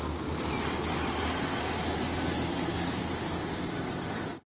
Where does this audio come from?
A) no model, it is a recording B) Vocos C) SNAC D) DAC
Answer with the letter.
A